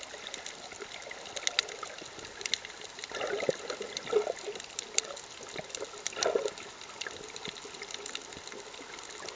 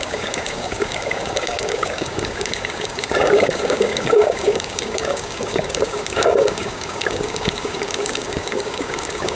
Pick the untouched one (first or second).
first